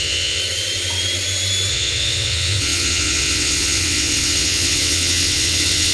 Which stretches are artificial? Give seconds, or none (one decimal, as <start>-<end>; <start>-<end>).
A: 0.0-0.4; 1.7-5.9

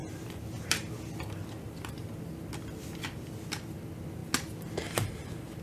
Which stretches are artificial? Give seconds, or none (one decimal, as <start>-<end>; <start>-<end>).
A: none

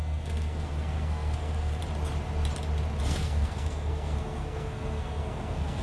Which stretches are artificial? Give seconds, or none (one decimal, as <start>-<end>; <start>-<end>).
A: 0.0-1.8; 3.0-5.8

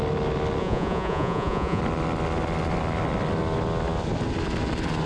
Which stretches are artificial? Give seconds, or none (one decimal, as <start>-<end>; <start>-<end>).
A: 0.6-1.8

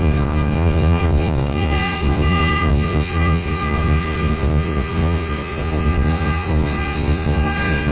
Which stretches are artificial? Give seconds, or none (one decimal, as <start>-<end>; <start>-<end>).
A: 0.0-7.9